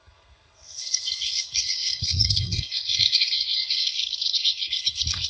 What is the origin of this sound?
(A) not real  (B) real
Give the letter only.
A